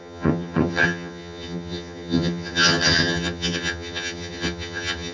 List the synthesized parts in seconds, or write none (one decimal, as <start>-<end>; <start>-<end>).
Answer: 0.0-5.1